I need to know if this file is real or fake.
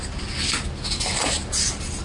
real